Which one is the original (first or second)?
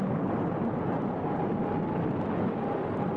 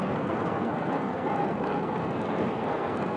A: first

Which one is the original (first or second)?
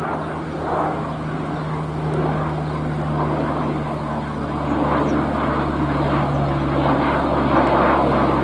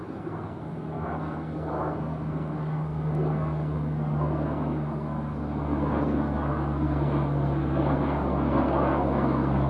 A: first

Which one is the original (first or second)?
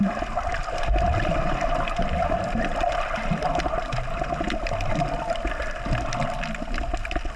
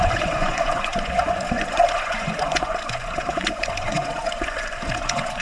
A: first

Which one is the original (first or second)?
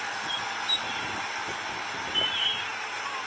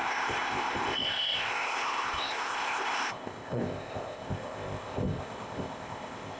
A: first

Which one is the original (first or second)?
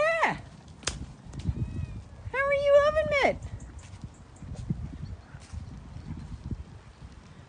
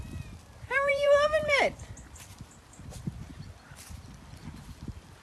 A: first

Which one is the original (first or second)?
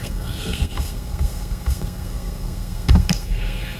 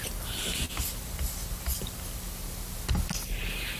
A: second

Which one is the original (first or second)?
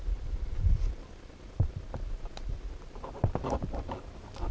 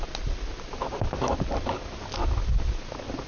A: second